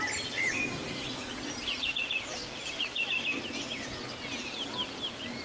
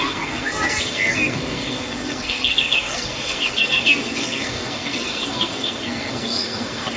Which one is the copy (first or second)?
second